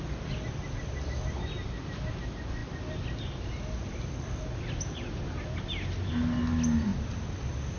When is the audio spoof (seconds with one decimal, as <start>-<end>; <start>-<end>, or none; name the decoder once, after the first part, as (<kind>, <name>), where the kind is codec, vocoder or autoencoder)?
none